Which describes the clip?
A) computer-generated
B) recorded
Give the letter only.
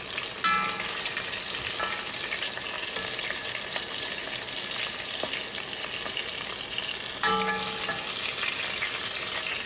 B